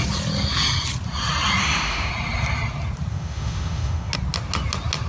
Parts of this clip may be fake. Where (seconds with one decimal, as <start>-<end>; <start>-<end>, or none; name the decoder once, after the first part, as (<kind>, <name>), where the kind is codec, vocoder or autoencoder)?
1.6-2.1 (autoencoder, DAC-VAE); 3.1-4.1